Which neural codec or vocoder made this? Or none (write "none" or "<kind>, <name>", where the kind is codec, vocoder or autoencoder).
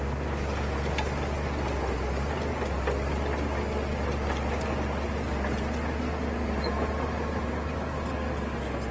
none